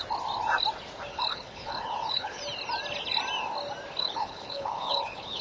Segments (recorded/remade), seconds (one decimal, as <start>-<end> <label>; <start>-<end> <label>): 0.0-1.1 recorded; 1.1-2.4 remade; 2.4-4.0 recorded; 4.0-5.4 remade